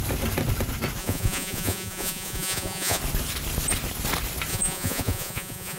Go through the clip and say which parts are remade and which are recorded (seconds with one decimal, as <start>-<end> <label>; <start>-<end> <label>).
0.0-1.0 recorded; 1.0-3.0 remade; 3.0-4.5 recorded; 4.5-5.8 remade